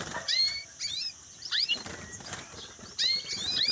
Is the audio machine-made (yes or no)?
no